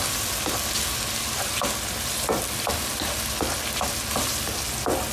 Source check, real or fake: real